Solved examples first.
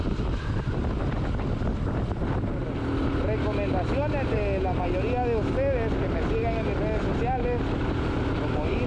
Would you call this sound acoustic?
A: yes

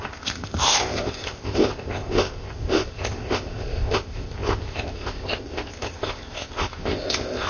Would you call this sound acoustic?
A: no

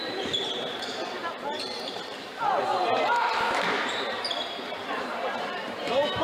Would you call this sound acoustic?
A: no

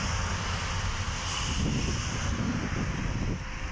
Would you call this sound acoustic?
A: yes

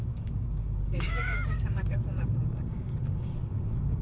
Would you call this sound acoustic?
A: no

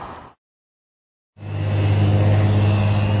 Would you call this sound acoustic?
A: yes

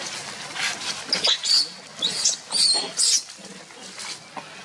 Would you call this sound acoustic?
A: yes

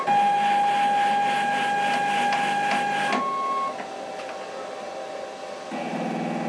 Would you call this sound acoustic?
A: yes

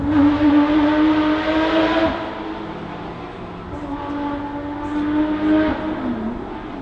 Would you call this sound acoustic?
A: yes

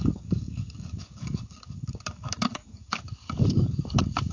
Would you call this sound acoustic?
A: no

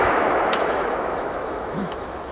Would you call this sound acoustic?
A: no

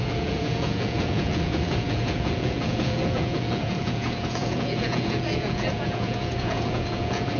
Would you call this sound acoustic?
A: no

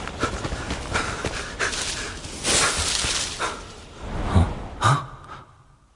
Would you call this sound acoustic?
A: yes